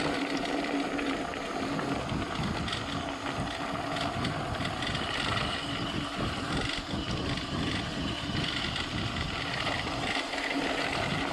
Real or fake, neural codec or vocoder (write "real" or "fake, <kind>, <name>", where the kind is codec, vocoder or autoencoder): real